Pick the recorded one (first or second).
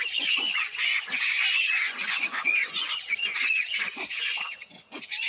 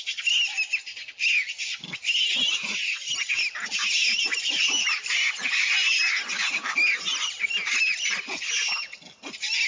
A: second